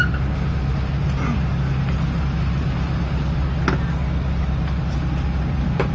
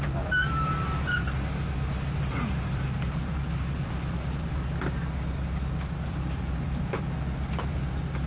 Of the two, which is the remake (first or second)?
second